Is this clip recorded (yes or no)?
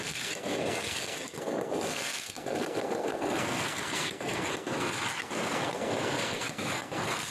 no